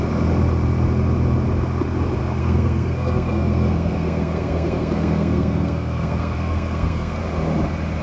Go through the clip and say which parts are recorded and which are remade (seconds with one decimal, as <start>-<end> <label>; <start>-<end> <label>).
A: 0.0-2.4 recorded; 2.4-7.2 remade; 7.2-8.0 recorded